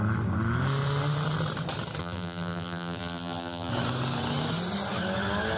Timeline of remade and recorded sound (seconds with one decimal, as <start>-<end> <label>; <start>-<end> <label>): 0.0-2.0 recorded; 2.0-3.7 remade; 3.7-5.6 recorded